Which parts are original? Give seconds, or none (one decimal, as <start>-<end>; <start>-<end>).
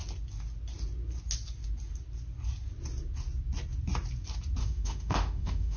0.0-4.6